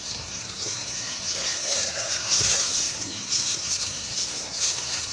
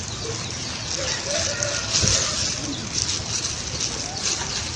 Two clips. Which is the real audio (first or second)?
second